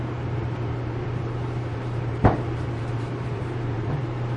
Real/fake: fake